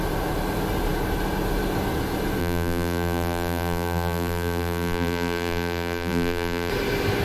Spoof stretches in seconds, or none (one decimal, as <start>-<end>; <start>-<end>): 2.4-6.7